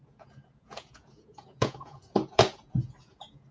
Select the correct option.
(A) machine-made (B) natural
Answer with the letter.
A